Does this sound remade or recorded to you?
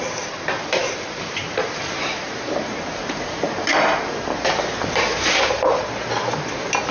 remade